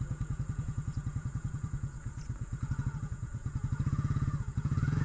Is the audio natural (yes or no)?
no